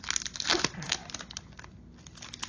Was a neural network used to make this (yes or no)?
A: no